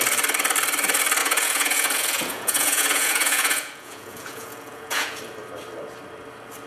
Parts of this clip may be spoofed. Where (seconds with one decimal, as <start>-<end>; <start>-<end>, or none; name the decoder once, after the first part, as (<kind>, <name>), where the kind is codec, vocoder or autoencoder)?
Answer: 1.2-5.2 (vocoder, Vocos)